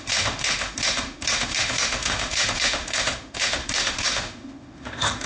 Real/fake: fake